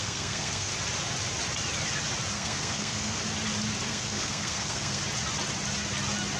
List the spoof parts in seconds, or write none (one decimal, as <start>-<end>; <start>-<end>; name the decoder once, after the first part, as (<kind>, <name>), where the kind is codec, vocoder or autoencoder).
0.0-0.7 (codec, SNAC); 2.3-3.2; 3.9-5.0